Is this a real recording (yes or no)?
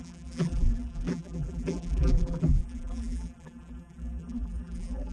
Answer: no